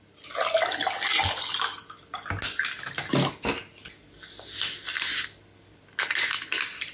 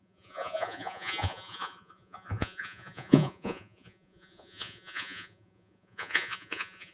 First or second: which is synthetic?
second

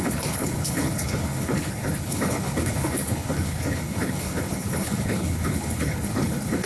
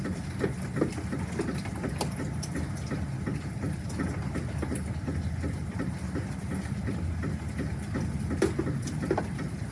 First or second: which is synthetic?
first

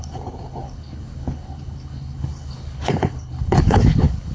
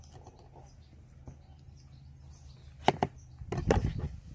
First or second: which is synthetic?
first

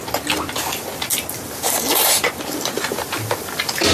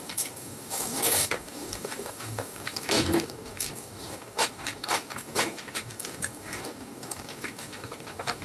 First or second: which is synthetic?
second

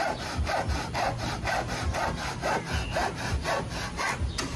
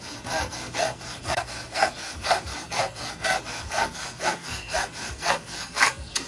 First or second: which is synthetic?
second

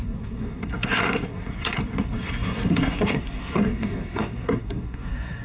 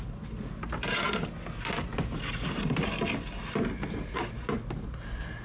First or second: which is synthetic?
first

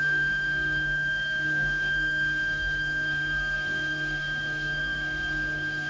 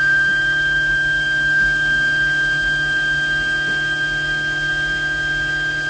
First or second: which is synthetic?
first